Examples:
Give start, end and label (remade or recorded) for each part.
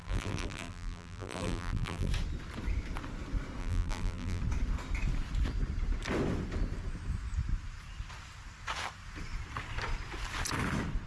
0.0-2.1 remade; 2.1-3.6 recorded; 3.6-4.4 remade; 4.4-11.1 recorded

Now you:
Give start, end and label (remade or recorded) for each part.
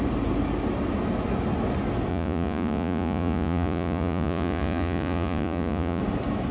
0.0-2.1 recorded; 2.1-6.0 remade; 6.0-6.5 recorded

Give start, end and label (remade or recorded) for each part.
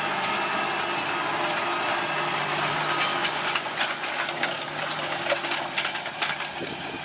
0.0-3.2 recorded; 3.2-4.1 remade; 4.1-7.0 recorded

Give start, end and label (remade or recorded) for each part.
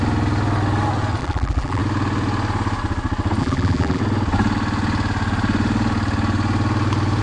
0.0-1.2 recorded; 1.2-1.8 remade; 1.8-3.4 recorded; 3.4-4.0 remade; 4.0-7.2 recorded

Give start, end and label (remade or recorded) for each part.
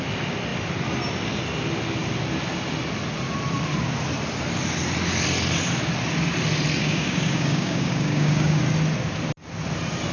0.0-6.8 recorded; 6.8-8.6 remade; 8.6-10.1 recorded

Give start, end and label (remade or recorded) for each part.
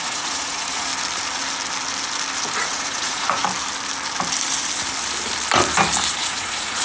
0.0-0.9 remade; 0.9-2.6 recorded; 2.6-3.4 remade; 3.4-6.1 recorded; 6.1-6.8 remade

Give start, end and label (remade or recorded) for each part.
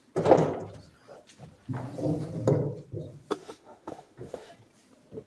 0.0-3.4 recorded; 3.4-4.5 remade; 4.5-5.3 recorded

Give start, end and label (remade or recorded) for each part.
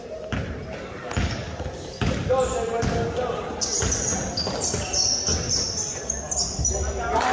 0.0-7.3 recorded